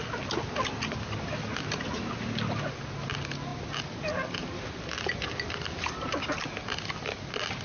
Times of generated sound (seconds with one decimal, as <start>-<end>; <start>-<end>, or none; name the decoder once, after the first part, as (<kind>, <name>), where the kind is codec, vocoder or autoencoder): none